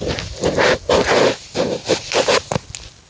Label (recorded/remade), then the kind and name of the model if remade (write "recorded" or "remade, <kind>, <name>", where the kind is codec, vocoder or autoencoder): recorded